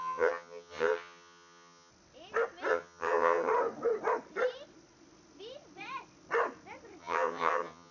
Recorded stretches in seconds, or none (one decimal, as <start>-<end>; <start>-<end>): 1.9-2.7; 3.5-7.0